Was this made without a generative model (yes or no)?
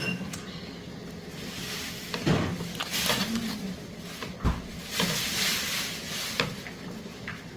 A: yes